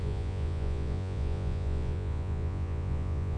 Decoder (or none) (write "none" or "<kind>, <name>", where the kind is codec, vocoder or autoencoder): vocoder, Vocos